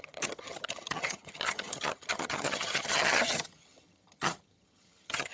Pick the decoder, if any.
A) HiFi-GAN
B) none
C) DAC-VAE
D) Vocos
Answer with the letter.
A